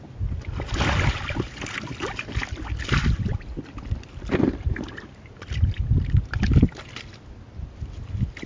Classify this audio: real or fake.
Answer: real